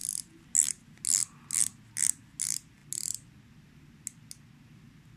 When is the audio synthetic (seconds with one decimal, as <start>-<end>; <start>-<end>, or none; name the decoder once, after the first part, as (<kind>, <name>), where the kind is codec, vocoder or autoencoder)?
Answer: none